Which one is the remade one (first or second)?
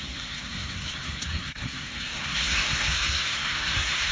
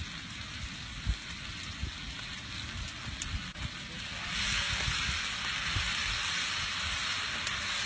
first